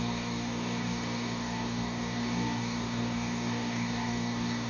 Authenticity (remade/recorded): remade